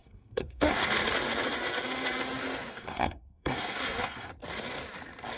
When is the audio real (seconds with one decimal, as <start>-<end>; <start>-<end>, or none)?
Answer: 0.8-2.7; 4.3-5.4